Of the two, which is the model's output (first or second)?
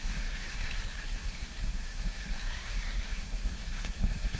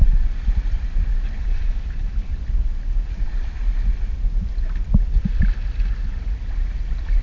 first